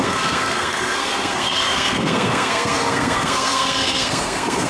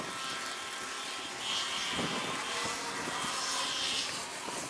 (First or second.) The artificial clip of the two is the first